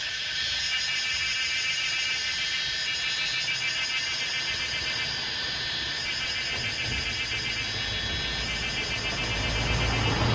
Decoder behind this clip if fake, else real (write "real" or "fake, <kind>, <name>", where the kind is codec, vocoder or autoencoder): real